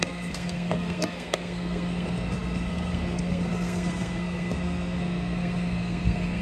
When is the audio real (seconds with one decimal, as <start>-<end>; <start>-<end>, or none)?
none